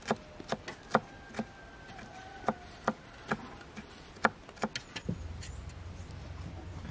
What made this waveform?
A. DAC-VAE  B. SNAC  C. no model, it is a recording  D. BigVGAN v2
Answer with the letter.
C